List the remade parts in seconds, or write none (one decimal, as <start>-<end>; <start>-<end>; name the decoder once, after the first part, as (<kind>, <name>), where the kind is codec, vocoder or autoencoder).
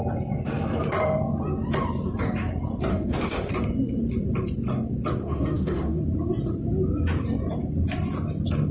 2.9-3.5 (autoencoder, DAC-VAE); 5.2-6.0